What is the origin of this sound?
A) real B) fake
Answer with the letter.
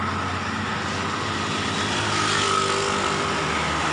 A